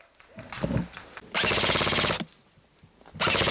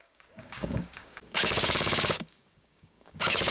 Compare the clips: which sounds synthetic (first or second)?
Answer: second